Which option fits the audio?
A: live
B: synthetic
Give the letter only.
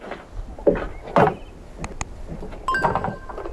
A